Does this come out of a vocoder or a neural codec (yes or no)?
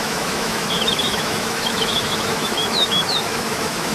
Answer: yes